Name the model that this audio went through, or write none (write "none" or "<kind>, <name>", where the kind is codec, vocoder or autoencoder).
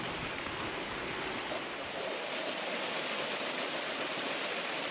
none